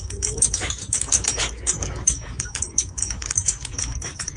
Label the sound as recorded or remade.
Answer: remade